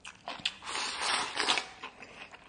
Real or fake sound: real